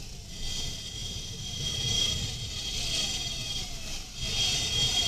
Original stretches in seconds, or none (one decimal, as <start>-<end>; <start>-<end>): 0.0-5.1